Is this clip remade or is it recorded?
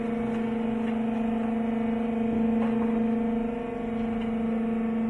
recorded